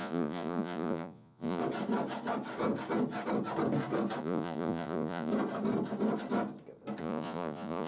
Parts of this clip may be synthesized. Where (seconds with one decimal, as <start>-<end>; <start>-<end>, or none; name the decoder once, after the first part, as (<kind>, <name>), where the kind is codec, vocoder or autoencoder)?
0.0-1.6 (vocoder, Vocos); 4.2-5.3; 7.0-7.9

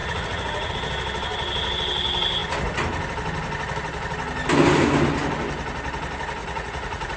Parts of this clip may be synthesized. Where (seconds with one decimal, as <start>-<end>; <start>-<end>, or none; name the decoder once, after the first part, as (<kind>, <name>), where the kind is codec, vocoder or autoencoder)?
0.0-0.7 (vocoder, Vocos); 6.4-7.2

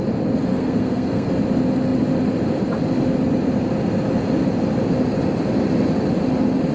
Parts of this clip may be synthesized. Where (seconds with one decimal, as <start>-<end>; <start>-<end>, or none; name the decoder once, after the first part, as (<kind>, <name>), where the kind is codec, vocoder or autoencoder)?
0.5-1.3 (codec, SNAC)

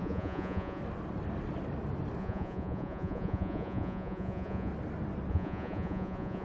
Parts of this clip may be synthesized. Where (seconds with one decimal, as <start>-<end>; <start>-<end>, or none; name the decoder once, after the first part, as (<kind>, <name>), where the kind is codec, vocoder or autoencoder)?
0.0-0.8 (vocoder, Vocos); 2.2-4.7; 5.3-6.4

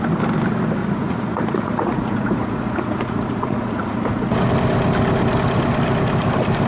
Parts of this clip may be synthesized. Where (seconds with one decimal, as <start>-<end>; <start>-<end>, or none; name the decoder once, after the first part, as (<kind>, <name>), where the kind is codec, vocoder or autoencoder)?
0.8-4.5 (vocoder, Vocos)

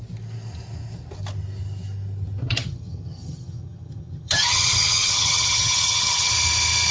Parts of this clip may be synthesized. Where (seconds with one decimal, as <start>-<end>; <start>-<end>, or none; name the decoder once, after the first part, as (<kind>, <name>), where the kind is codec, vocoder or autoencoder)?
2.4-6.3 (vocoder, HiFi-GAN)